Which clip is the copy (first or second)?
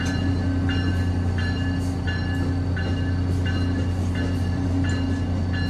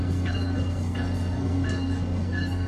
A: second